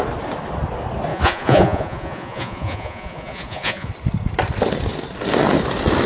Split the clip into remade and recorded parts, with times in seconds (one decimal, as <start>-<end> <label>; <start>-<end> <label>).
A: 0.0-1.1 recorded; 1.1-3.9 remade; 3.9-6.1 recorded